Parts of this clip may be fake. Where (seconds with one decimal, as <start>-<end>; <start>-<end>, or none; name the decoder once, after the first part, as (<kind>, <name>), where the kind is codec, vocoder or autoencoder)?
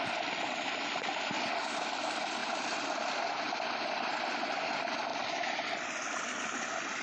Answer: none